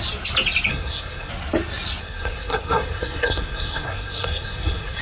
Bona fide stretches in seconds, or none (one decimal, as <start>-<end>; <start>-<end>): 0.0-0.7; 1.3-2.0